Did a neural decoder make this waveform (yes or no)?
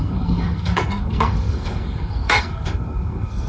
yes